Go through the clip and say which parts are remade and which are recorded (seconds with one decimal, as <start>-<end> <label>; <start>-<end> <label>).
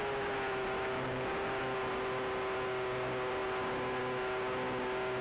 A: 0.0-5.2 recorded